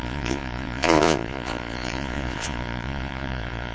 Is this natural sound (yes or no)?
no